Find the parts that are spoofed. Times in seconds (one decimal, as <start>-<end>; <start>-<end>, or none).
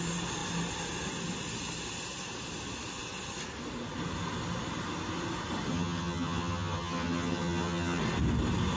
5.7-8.0